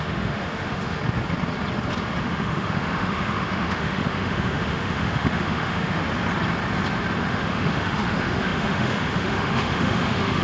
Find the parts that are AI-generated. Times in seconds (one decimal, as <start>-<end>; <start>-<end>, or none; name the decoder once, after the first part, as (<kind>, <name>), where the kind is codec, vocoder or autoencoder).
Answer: 0.0-1.0 (autoencoder, DAC-VAE); 2.2-6.0; 7.2-10.4